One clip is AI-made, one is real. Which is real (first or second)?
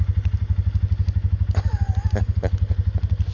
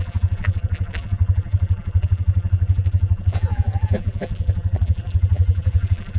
first